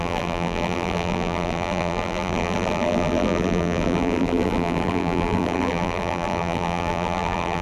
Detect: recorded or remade remade